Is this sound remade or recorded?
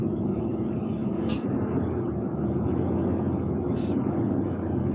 remade